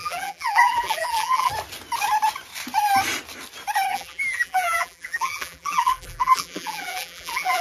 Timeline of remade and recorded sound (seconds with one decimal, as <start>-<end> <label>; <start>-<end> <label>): 0.0-1.5 remade; 1.5-3.9 recorded; 3.9-7.6 remade